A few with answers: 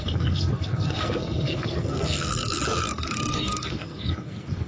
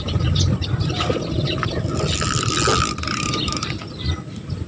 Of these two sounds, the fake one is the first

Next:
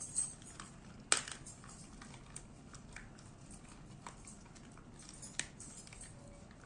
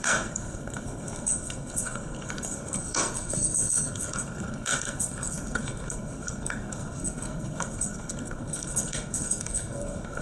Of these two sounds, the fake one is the second